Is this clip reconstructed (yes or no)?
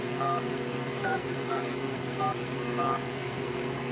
yes